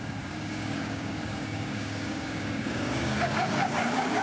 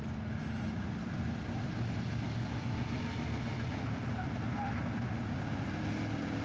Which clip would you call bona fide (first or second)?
second